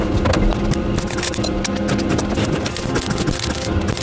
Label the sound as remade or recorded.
recorded